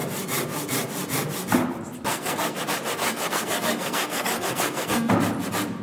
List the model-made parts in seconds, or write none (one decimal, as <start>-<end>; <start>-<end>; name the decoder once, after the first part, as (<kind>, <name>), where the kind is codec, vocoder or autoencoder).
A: 2.1-2.6 (codec, SNAC); 3.0-5.1